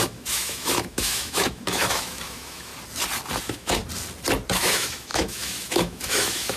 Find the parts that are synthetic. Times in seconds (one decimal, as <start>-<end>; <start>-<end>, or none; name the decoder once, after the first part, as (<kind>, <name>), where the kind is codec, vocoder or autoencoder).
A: 0.0-2.7 (autoencoder, DAC-VAE); 3.4-3.8; 4.6-6.6